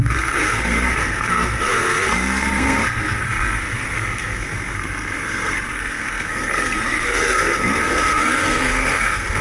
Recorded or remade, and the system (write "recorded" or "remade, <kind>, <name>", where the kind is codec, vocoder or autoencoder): remade, codec, SNAC